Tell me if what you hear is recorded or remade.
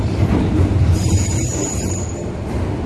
remade